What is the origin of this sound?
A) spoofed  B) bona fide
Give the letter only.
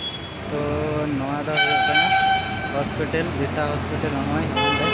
B